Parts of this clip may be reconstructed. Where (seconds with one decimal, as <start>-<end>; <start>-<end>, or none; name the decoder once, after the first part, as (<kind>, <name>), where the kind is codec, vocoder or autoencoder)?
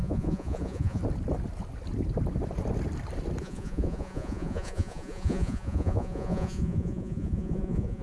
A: 0.0-1.0 (vocoder, Vocos); 3.4-8.0